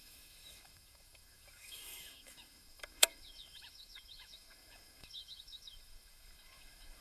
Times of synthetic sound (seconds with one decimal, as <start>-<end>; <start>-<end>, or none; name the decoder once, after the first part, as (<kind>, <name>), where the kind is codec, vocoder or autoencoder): 0.0-7.0 (autoencoder, DAC-VAE)